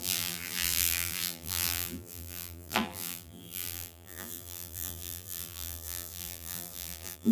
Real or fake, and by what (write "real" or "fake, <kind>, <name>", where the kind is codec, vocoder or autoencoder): fake, vocoder, BigVGAN v2